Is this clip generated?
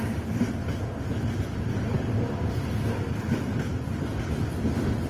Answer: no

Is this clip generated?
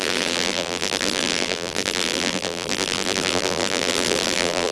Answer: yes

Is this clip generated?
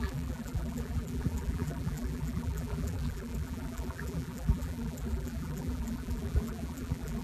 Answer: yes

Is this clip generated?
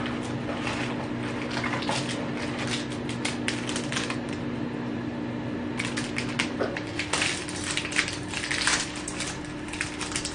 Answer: no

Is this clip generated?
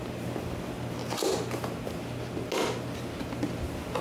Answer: no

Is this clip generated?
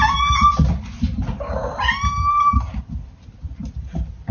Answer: no